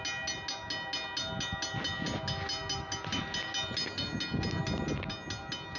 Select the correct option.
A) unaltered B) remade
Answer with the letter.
A